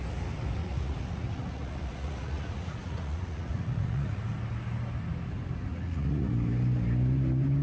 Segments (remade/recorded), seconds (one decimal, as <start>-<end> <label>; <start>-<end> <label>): 0.0-0.6 recorded; 0.6-4.2 remade; 4.2-5.7 recorded; 5.7-6.3 remade; 6.3-7.6 recorded